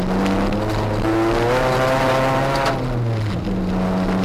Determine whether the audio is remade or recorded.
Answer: recorded